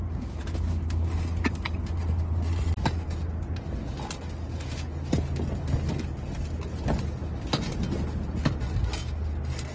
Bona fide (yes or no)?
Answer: yes